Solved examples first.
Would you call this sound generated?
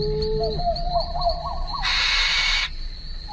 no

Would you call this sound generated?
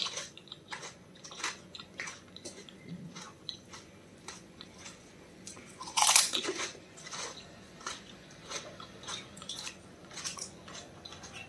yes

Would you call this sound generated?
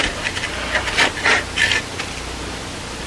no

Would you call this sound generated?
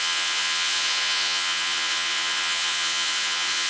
yes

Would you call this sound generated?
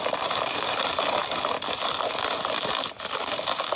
no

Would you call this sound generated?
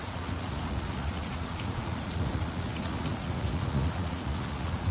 yes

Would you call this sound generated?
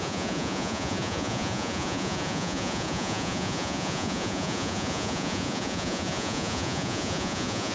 yes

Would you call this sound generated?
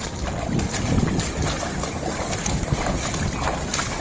no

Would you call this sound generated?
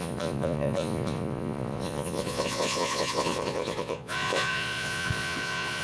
yes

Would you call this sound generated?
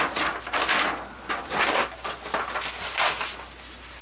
no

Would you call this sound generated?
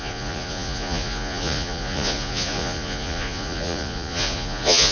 yes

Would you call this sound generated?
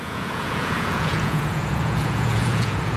yes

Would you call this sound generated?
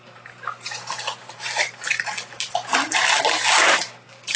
no